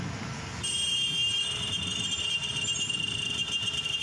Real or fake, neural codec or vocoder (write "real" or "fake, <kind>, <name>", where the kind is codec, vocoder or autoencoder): real